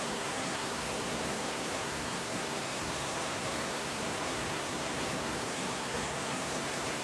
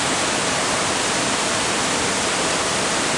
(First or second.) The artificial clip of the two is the first